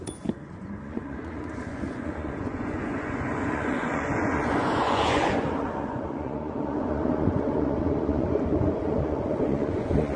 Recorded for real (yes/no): no